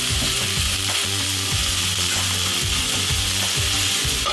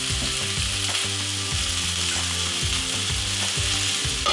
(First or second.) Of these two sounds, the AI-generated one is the first